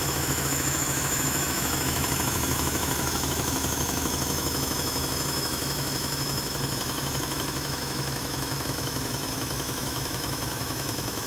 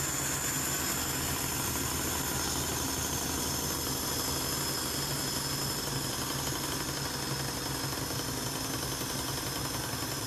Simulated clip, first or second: first